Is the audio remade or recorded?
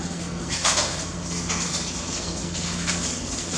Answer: remade